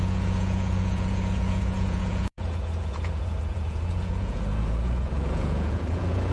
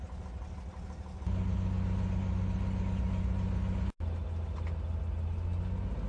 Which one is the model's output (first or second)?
first